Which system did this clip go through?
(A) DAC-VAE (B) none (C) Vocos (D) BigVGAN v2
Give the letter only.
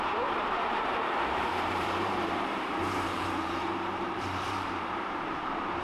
D